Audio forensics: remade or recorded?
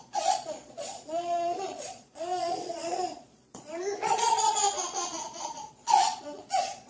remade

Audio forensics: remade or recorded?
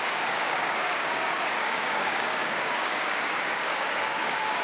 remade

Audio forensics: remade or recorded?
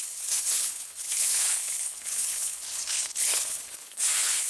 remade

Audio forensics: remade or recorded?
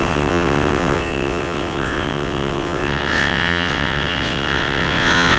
remade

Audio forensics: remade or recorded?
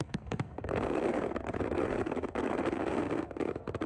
remade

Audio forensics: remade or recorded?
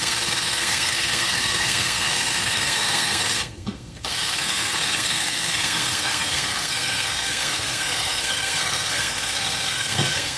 remade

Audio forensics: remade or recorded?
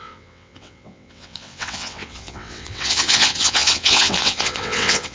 remade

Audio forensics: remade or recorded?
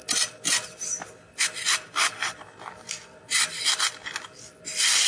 recorded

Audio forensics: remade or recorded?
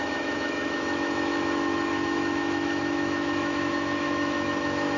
remade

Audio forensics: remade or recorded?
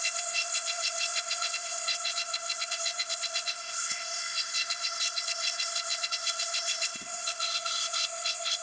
remade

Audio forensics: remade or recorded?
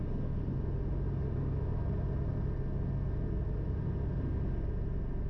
recorded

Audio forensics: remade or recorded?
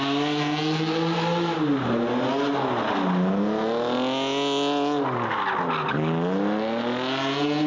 recorded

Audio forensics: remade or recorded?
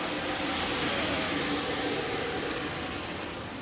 recorded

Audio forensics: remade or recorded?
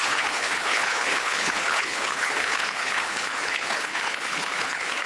remade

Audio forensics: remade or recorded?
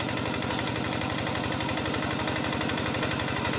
recorded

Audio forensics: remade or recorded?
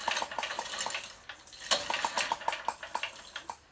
recorded